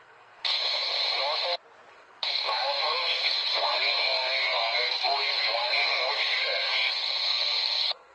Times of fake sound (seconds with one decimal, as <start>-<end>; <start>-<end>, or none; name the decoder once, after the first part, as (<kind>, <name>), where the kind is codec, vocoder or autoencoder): 0.0-0.9 (codec, SNAC); 1.9-8.1